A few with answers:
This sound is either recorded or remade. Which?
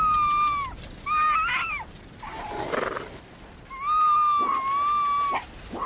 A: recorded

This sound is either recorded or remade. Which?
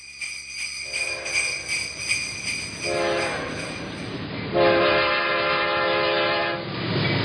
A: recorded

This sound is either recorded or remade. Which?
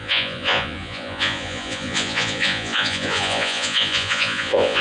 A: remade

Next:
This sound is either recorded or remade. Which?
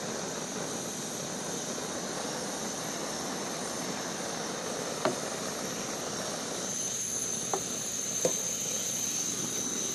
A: recorded